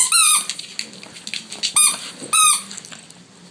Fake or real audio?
real